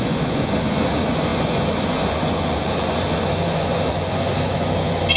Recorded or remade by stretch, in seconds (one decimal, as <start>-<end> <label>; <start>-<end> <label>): 0.0-5.2 remade